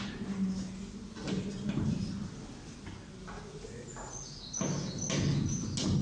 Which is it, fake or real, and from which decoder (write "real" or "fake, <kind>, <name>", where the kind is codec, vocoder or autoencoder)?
real